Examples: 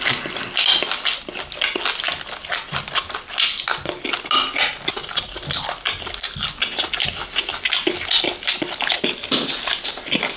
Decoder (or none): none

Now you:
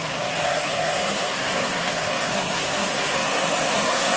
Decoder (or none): codec, SNAC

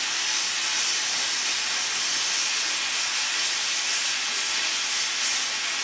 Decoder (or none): none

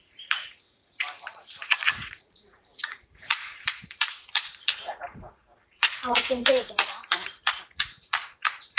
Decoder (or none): vocoder, Vocos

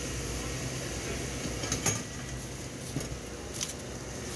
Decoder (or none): none